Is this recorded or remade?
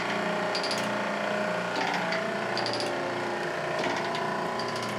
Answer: recorded